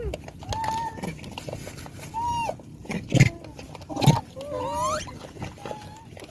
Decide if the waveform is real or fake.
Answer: real